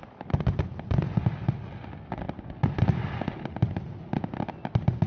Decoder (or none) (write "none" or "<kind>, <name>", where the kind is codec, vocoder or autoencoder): none